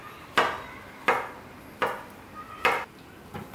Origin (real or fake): real